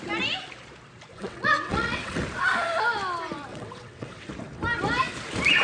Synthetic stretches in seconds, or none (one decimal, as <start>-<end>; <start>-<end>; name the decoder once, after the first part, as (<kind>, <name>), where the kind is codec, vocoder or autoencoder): 1.1-2.2 (vocoder, WaveNeXt); 3.5-4.3